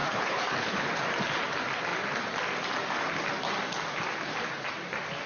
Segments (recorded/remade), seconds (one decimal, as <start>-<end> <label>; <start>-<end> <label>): 0.0-1.0 remade; 1.0-5.3 recorded